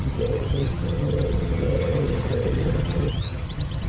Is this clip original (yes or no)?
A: no